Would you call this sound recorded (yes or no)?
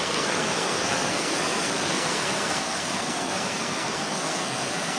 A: no